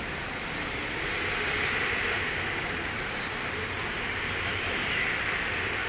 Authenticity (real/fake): real